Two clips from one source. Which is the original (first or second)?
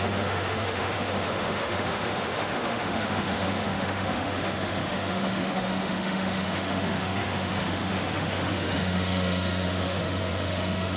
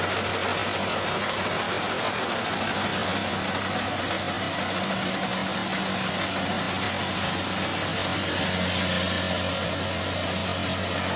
second